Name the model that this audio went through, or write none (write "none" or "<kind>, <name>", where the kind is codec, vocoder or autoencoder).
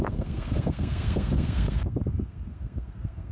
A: codec, SNAC